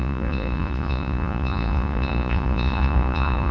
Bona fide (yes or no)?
no